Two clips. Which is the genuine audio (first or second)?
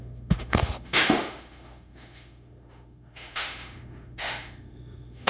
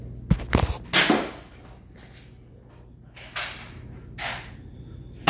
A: second